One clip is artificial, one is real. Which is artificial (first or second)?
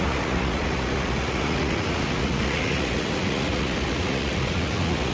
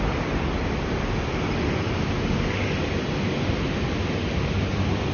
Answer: first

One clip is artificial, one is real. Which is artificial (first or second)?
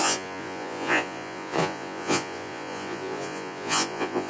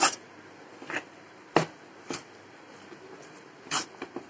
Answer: first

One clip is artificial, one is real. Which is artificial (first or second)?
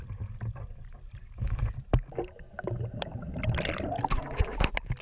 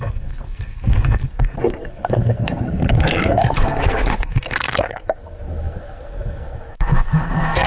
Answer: second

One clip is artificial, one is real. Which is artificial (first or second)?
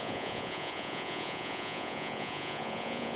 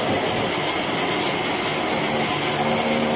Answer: first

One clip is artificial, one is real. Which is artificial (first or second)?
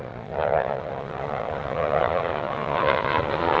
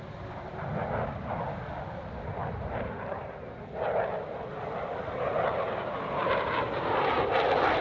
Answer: first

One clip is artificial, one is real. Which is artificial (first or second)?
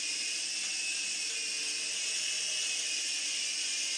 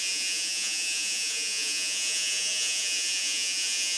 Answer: second